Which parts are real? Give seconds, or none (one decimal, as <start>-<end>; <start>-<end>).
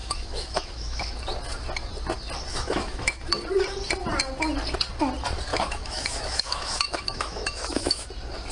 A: 1.1-2.5; 3.2-5.5; 8.1-8.5